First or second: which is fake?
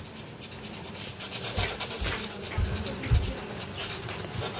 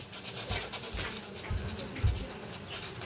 first